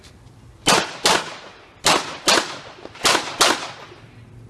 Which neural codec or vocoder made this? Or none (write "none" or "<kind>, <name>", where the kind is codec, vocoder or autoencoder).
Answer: none